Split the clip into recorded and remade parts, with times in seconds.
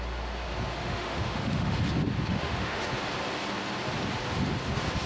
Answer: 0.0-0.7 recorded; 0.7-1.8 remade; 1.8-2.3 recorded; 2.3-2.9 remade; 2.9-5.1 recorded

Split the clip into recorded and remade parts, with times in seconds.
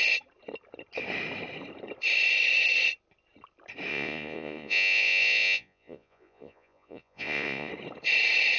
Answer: 0.0-3.9 recorded; 3.9-7.7 remade; 7.7-8.6 recorded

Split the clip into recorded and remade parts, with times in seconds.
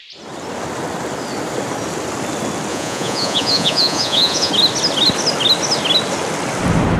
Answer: 0.0-2.7 recorded; 2.7-4.5 remade; 4.5-7.0 recorded